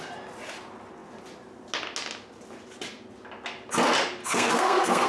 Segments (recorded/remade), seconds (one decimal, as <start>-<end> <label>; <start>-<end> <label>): 0.0-4.2 recorded; 4.2-5.1 remade

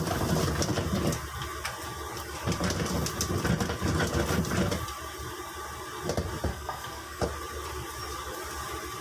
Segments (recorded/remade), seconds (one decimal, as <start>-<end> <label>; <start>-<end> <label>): 0.0-6.5 recorded; 6.5-7.2 remade; 7.2-9.0 recorded

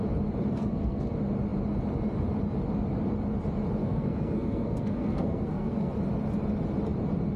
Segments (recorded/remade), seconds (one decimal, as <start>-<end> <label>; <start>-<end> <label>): 0.0-0.5 recorded; 0.5-1.1 remade; 1.1-3.8 recorded; 3.8-5.9 remade; 5.9-7.4 recorded

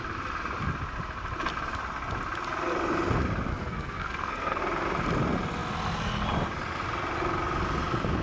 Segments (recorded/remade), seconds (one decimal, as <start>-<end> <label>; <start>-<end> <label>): 0.0-3.5 recorded; 3.5-4.6 remade; 4.6-8.2 recorded

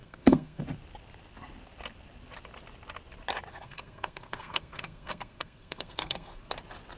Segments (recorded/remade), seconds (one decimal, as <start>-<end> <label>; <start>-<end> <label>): 0.0-0.6 remade; 0.6-3.5 recorded; 3.5-6.5 remade; 6.5-7.0 recorded